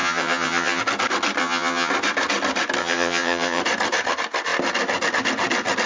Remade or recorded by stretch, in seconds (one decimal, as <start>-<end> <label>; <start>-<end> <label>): 0.0-0.8 remade; 0.8-1.4 recorded; 1.4-1.9 remade; 1.9-2.8 recorded; 2.8-3.6 remade; 3.6-5.9 recorded